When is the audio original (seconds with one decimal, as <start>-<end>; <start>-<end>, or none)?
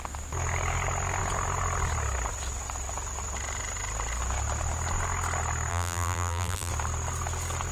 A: 0.0-5.7; 6.7-7.7